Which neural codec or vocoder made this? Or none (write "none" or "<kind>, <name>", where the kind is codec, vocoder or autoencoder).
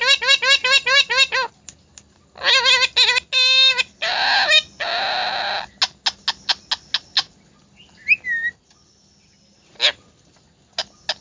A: none